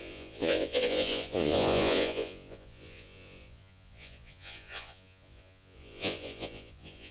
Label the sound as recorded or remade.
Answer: remade